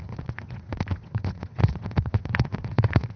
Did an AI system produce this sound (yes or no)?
yes